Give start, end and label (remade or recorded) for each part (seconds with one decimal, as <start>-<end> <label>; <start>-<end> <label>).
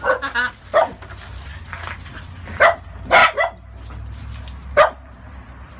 0.0-5.8 recorded